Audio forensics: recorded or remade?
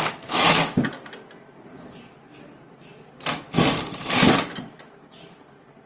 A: recorded